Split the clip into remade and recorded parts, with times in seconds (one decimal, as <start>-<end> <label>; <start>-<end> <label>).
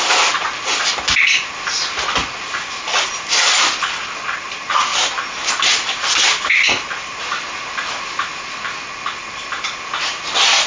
0.0-10.7 recorded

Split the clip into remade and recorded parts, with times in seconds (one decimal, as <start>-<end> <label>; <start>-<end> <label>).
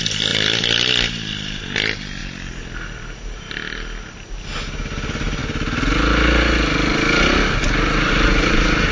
0.0-8.9 recorded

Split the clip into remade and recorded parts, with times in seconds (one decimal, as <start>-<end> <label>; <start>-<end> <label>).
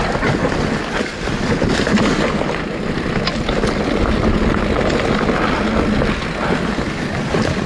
0.0-7.7 recorded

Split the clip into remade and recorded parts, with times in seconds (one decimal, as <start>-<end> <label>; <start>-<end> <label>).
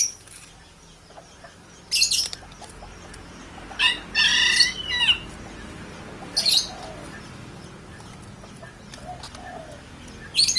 0.0-10.6 recorded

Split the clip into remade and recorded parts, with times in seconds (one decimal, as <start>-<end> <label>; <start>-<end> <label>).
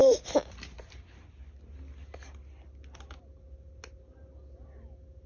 0.0-5.3 recorded